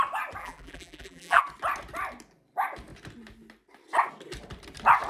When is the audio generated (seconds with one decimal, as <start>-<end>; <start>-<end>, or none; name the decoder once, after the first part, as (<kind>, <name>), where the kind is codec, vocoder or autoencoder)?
0.4-1.4 (vocoder, BigVGAN v2)